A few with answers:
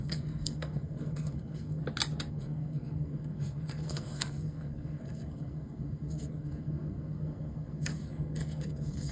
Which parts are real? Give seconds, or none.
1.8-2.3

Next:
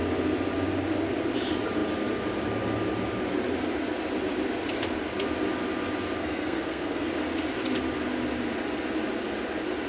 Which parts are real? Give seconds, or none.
0.0-6.2; 7.1-9.9

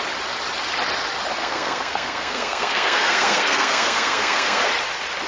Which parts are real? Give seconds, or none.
0.0-1.4; 4.6-5.3

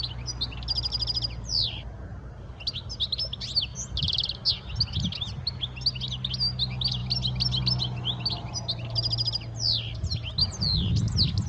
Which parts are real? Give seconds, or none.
0.0-11.5

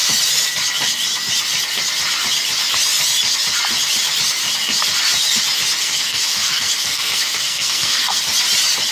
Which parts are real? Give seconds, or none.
0.0-5.8; 8.2-8.9

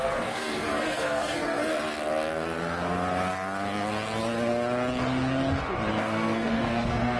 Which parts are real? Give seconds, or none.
1.7-6.0